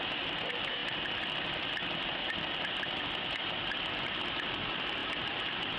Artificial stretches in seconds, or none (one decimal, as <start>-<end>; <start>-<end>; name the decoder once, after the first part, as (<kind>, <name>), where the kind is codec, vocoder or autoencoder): none